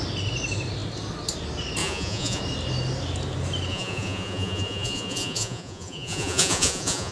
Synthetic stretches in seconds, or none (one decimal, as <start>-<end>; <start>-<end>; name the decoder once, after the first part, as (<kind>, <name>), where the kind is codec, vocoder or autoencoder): 1.8-2.4 (vocoder, Vocos); 3.7-7.1